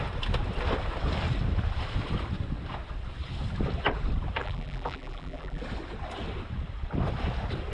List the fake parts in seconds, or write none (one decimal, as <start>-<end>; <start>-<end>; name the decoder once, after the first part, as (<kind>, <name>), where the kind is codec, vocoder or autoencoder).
4.4-5.6 (vocoder, BigVGAN v2)